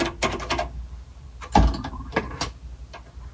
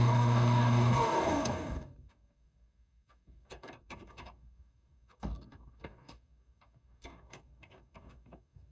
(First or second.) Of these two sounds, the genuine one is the first